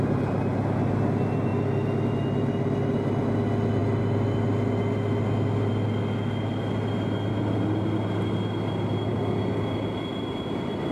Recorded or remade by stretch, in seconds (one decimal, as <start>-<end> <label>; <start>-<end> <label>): 0.0-10.9 recorded